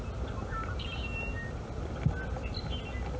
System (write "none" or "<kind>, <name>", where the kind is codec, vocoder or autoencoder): none